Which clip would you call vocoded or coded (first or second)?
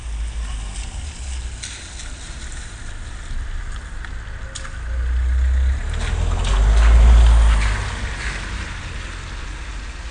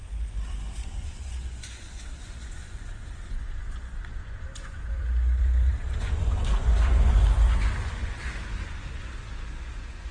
second